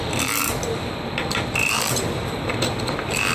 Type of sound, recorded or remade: recorded